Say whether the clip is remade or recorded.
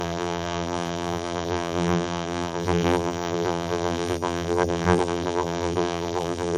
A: remade